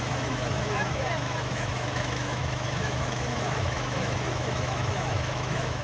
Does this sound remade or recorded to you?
remade